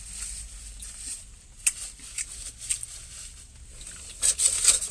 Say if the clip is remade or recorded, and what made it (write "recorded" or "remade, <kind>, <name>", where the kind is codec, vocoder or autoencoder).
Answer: recorded